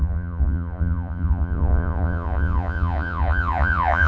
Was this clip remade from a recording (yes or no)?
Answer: yes